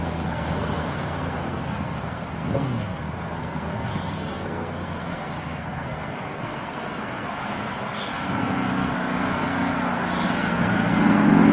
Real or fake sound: fake